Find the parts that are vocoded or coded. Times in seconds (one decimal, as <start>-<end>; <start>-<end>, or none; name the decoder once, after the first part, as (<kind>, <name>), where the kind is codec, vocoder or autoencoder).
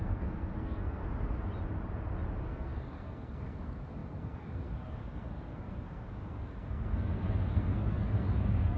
0.0-1.0 (codec, SNAC); 2.4-8.8